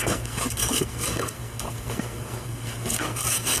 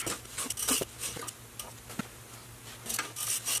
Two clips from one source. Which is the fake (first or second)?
first